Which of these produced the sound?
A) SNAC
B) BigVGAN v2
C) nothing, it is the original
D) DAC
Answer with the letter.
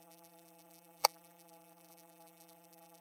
B